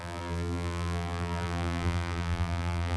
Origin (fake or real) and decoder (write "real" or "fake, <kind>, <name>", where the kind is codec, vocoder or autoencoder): fake, vocoder, BigVGAN v2